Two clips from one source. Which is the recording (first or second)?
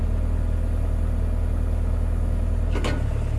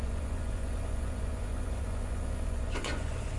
first